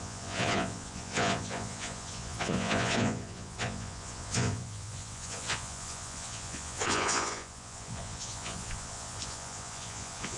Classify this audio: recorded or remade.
remade